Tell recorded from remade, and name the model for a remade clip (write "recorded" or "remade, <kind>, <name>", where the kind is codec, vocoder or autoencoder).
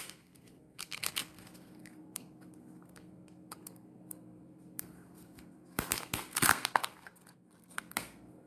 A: remade, codec, SNAC